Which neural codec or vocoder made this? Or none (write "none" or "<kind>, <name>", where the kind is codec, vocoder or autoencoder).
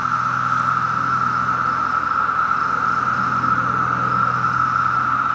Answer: none